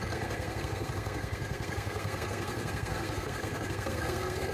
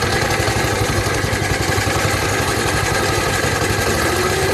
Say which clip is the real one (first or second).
second